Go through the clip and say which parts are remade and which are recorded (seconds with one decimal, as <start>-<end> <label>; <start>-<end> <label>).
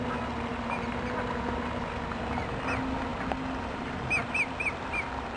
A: 0.0-0.5 remade; 0.5-2.4 recorded; 2.4-3.1 remade; 3.1-3.6 recorded; 3.6-5.4 remade